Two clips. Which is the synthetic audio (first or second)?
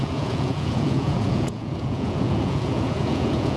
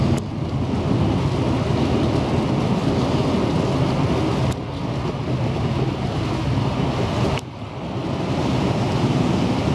first